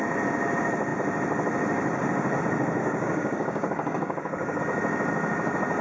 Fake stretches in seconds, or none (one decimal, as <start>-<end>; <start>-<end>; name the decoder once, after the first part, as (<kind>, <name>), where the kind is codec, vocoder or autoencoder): 2.8-4.6 (codec, DAC)